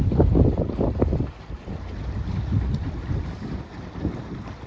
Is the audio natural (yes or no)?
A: yes